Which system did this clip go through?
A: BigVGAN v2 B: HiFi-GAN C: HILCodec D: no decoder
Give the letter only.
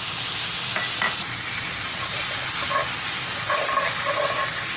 D